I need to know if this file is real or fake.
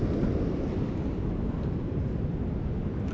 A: real